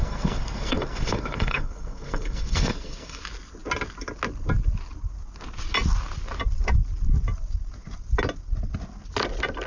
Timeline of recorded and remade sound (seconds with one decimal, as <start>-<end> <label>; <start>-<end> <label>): 0.0-3.2 remade; 3.2-9.7 recorded

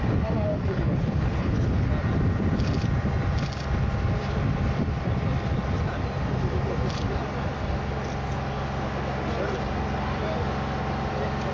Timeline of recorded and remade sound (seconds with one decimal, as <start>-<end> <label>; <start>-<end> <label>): 0.0-0.5 recorded; 0.5-1.9 remade; 1.9-11.5 recorded